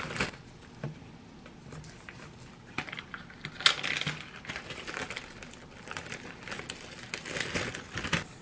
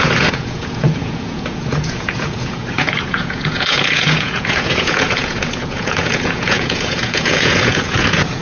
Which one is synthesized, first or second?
second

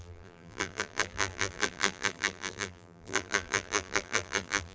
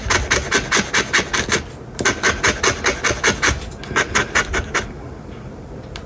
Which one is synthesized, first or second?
first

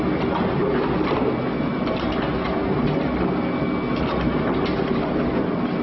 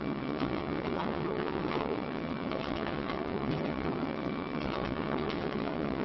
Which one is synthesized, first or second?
second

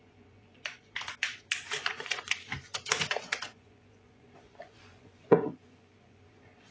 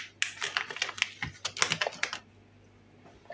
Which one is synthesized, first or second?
first